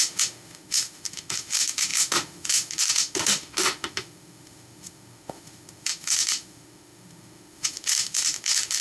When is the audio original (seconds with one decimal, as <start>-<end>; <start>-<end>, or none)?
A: none